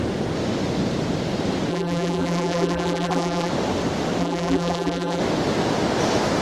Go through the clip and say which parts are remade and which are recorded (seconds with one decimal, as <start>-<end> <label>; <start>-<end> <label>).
0.0-1.7 recorded; 1.7-3.5 remade; 3.5-4.2 recorded; 4.2-5.2 remade; 5.2-6.4 recorded